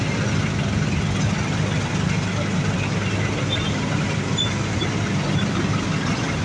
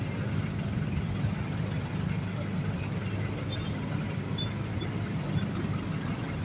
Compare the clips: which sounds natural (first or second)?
first